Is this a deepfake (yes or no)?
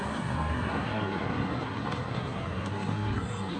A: yes